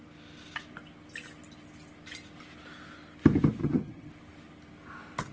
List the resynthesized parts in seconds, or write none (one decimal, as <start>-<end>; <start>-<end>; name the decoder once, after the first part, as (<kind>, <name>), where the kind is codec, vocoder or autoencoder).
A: 3.6-4.1 (vocoder, HiFi-GAN)